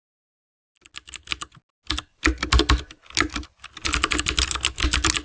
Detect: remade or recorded recorded